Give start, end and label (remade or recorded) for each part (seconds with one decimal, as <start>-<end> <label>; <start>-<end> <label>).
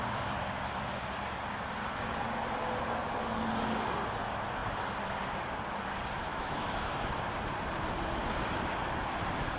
0.0-6.3 recorded; 6.3-7.0 remade; 7.0-9.6 recorded